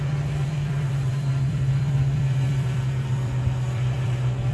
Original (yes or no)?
no